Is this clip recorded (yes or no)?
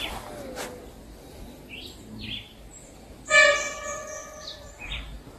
yes